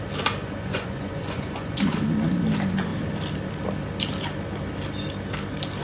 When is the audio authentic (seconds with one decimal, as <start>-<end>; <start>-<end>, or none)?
0.0-0.4; 1.9-5.8